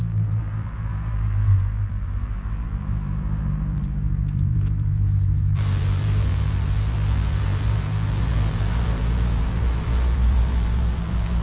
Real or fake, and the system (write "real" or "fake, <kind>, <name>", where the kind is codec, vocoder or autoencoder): fake, vocoder, BigVGAN v2